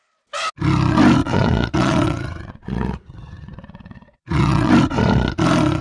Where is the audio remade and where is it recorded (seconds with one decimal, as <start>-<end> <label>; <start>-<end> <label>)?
0.0-1.2 recorded; 1.2-4.7 remade; 4.7-5.8 recorded